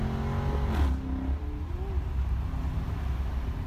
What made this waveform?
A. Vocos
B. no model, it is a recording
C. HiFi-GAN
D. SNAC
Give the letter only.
B